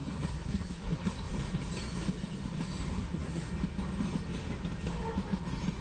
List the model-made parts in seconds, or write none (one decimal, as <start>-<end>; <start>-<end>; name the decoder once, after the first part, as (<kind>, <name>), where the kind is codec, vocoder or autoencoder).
0.0-1.3 (codec, SNAC); 2.9-3.5